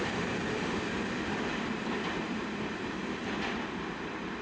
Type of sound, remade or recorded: recorded